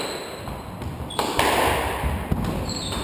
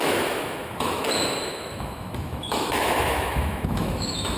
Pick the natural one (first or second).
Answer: first